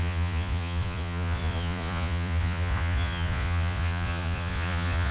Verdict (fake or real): fake